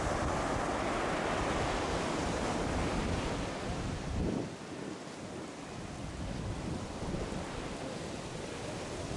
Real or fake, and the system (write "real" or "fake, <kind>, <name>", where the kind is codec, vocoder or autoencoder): real